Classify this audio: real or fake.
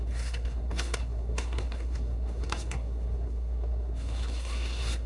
fake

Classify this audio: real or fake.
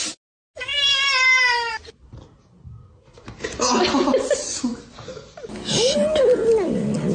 real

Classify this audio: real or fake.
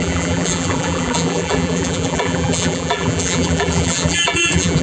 fake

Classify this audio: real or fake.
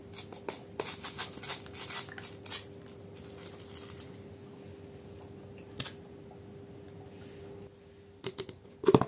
real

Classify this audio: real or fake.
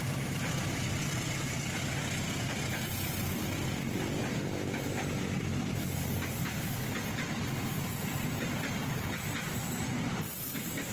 real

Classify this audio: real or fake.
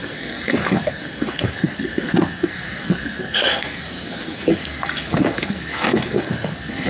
fake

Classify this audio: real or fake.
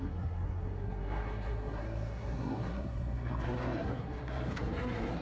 fake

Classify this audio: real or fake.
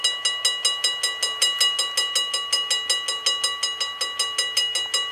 real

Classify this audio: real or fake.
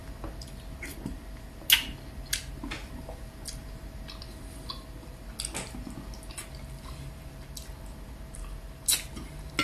real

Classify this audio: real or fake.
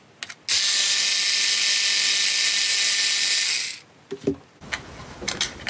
real